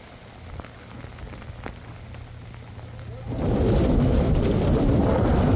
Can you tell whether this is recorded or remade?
recorded